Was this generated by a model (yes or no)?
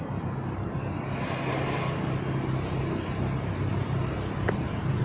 no